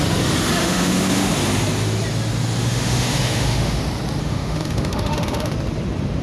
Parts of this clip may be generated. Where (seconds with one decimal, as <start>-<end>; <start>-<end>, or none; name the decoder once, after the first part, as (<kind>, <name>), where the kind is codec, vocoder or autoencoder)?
0.6-1.3 (autoencoder, DAC-VAE); 2.6-3.8; 4.2-5.5